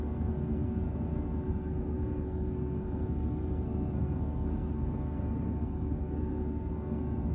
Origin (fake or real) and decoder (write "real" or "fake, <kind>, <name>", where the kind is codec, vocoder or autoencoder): fake, codec, SNAC